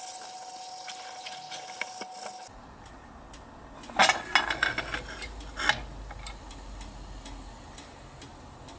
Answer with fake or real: real